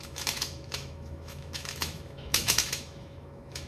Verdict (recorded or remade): remade